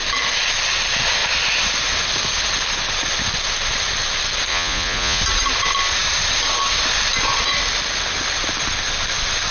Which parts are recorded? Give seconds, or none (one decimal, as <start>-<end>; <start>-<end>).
0.0-4.5; 5.2-9.5